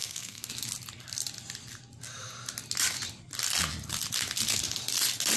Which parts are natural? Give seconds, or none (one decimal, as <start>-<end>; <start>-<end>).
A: 0.5-5.4

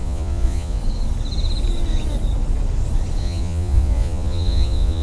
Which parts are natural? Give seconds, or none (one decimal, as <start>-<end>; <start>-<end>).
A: 0.8-3.2

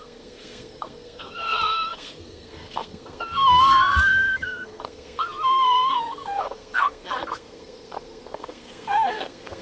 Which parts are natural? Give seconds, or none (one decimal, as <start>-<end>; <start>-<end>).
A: none

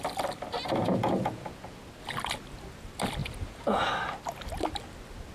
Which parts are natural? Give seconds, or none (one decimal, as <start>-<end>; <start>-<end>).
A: 0.0-0.8; 1.8-3.2; 3.9-5.3